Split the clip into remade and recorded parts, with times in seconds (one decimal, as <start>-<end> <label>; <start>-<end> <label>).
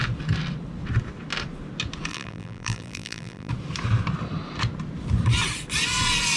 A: 0.0-2.1 recorded; 2.1-3.5 remade; 3.5-6.4 recorded